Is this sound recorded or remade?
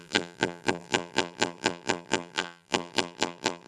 remade